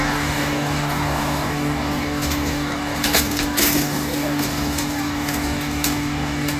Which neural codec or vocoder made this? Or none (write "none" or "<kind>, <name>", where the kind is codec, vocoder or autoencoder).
codec, DAC